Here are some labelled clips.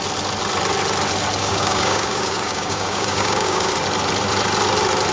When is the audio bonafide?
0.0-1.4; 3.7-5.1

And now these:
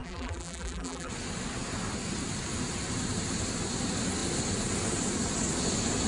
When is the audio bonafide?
1.1-6.1

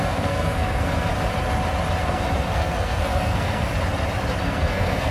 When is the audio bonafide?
1.1-2.0; 3.7-4.4

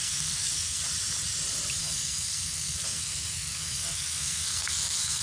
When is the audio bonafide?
0.8-1.8

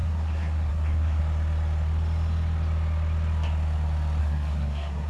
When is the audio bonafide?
1.2-4.2